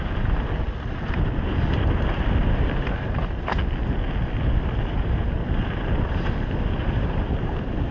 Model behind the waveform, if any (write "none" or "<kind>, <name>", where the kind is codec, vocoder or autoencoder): none